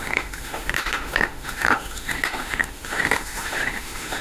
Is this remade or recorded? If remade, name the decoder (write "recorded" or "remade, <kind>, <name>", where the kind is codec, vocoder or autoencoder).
remade, autoencoder, DAC-VAE